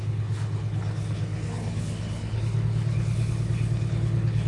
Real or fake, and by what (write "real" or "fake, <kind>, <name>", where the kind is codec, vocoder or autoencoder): fake, codec, HILCodec